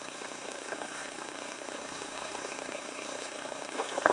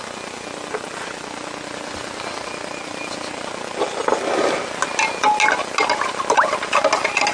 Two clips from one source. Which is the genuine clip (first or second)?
second